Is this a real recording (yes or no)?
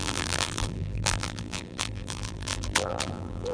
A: no